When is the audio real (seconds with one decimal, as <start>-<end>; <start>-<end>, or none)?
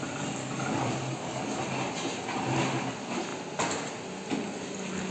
0.0-0.4; 1.6-5.1